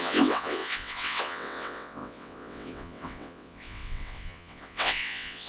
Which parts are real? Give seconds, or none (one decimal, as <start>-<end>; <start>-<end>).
none